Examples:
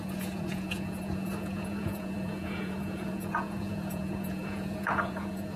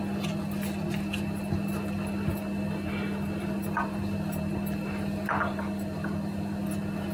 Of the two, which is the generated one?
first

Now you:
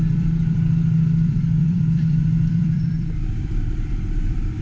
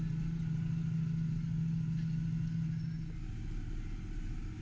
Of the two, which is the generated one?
first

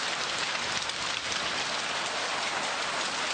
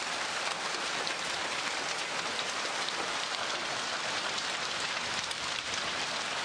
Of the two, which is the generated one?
second